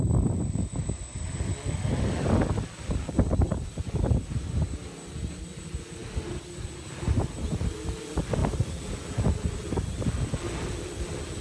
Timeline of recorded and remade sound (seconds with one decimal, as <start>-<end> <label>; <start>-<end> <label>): 0.0-11.4 recorded